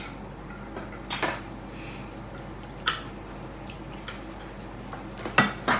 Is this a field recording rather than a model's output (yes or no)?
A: yes